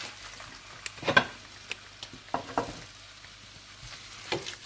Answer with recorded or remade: recorded